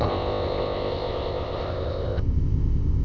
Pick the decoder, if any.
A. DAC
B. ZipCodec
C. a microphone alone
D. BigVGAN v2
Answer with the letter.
B